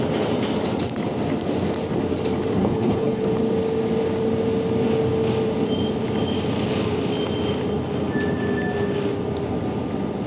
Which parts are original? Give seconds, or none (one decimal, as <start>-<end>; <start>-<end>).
0.0-2.6; 3.2-10.3